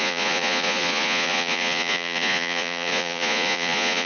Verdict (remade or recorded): remade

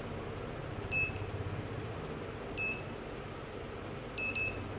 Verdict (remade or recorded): recorded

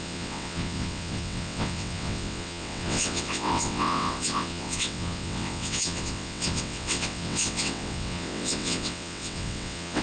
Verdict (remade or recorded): remade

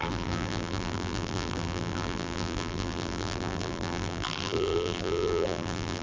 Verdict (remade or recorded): remade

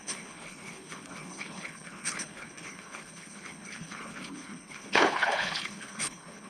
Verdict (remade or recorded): remade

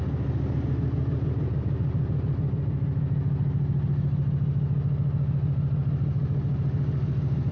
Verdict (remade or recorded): recorded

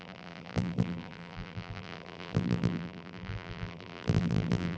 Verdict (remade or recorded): remade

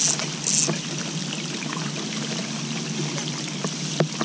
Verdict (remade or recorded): recorded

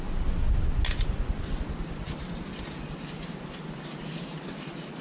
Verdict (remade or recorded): recorded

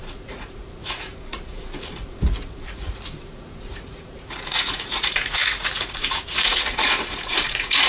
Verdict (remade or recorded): remade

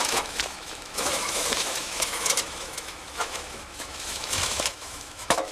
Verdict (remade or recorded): remade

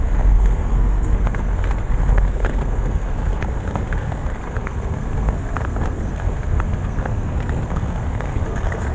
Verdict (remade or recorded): remade